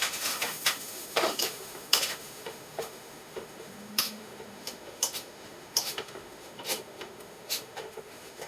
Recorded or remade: remade